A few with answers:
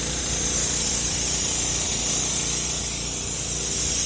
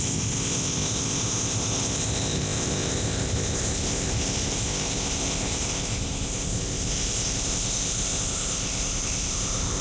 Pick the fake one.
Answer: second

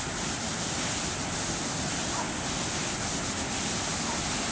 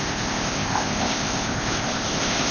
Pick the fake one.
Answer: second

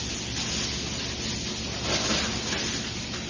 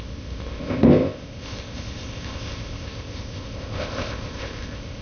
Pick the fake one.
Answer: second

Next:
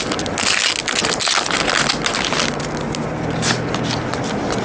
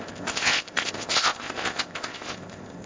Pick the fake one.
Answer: second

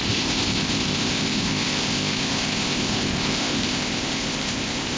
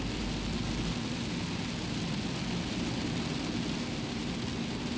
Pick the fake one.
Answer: first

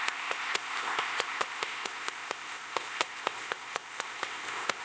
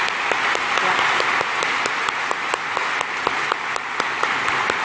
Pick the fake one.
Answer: first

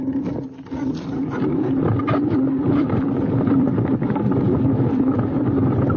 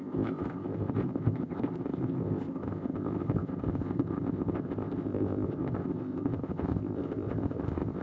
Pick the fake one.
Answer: second